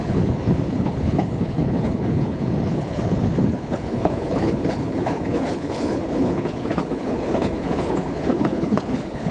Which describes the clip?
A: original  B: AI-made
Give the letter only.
B